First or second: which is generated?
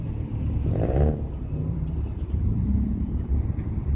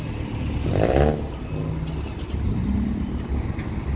first